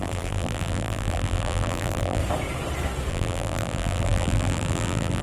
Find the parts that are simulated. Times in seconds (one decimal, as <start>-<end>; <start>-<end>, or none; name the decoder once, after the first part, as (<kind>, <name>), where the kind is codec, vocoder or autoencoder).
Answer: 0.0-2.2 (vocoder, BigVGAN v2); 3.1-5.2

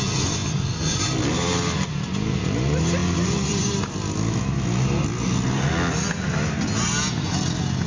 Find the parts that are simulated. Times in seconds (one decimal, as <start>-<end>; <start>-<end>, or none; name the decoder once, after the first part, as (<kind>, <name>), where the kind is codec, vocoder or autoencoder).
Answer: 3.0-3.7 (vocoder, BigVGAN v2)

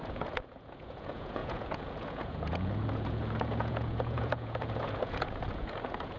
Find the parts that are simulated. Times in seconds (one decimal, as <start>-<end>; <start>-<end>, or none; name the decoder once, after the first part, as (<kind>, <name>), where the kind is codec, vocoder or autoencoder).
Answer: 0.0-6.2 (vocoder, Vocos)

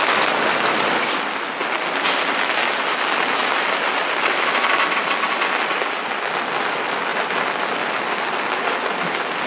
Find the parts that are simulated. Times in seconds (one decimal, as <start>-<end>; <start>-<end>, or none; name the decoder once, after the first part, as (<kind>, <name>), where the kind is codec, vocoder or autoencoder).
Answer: none